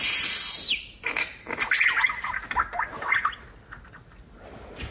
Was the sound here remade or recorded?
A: recorded